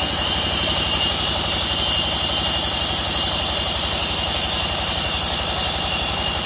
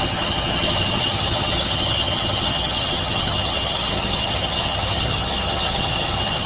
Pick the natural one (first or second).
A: first